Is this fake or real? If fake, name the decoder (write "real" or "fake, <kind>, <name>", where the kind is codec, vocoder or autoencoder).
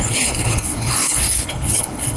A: fake, codec, HILCodec